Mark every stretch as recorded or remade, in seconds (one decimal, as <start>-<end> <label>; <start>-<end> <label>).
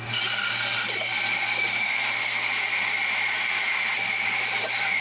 0.0-1.8 recorded; 1.8-2.5 remade; 2.5-5.0 recorded